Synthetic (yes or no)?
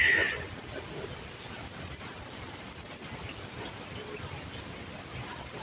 no